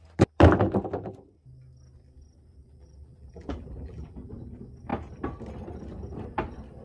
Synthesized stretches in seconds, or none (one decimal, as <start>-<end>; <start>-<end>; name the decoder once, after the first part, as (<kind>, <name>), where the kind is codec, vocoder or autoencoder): 2.6-4.3 (vocoder, BigVGAN v2)